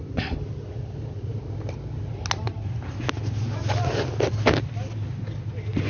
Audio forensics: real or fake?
real